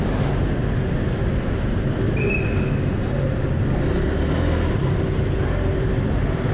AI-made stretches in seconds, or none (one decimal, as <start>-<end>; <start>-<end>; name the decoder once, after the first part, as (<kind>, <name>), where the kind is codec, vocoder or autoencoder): none